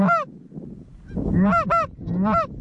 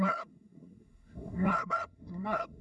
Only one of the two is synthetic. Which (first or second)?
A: second